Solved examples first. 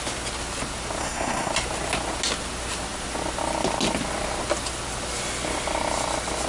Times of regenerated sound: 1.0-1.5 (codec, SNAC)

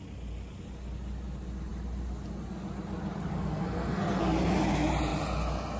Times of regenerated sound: 3.3-4.2 (codec, SNAC)